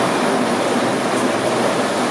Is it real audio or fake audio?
real